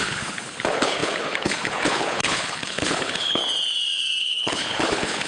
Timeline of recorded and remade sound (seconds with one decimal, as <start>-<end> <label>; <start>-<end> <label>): 0.0-3.4 remade; 3.4-4.2 recorded; 4.2-5.3 remade